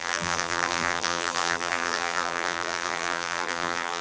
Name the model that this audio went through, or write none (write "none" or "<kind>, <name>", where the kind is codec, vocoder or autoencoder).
vocoder, BigVGAN v2